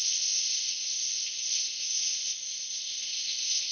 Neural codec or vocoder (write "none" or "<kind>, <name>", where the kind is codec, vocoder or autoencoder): codec, ZipCodec